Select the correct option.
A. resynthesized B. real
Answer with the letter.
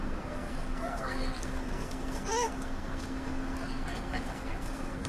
A